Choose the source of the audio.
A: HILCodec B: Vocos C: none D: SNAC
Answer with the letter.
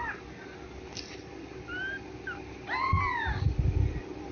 C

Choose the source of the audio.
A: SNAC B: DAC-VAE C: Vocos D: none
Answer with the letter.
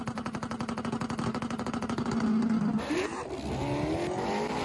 D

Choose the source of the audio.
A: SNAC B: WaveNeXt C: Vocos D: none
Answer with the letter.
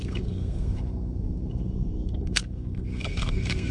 A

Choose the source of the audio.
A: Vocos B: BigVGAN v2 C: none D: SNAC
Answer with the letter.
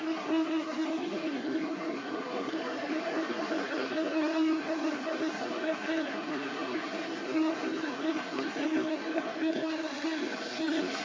D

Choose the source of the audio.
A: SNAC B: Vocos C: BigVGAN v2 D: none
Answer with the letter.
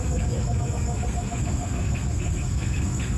A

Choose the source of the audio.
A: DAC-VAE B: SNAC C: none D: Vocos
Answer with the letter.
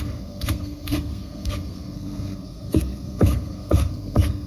B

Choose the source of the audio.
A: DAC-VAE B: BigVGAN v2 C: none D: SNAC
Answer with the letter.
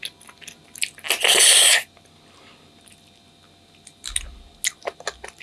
C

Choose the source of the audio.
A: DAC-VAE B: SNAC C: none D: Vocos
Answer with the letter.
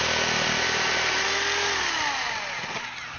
C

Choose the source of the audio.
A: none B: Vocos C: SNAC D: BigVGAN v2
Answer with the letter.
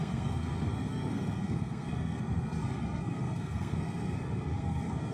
C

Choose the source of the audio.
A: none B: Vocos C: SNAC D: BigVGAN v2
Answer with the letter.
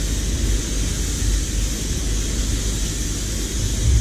A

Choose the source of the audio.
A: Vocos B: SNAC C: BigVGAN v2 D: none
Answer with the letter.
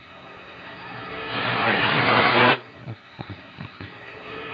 B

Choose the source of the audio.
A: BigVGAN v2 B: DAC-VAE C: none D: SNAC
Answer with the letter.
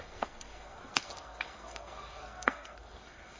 D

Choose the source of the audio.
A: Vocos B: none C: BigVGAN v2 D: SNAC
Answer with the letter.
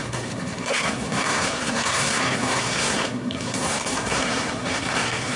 D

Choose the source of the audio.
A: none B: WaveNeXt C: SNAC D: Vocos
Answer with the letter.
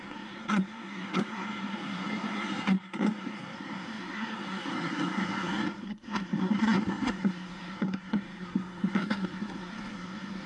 C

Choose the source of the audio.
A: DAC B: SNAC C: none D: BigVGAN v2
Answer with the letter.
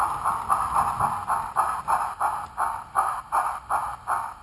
C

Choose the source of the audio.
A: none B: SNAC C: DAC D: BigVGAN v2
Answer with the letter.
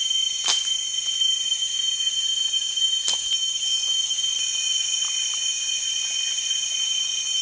A